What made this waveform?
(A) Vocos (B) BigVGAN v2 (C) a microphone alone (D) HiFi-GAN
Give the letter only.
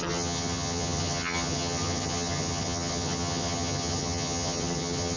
D